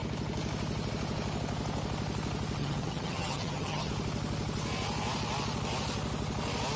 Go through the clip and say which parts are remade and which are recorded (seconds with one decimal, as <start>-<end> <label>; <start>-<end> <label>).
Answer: 0.0-2.6 recorded; 2.6-3.9 remade; 3.9-6.8 recorded